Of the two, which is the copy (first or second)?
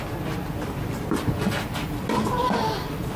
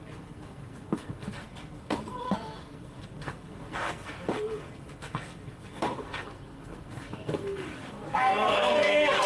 second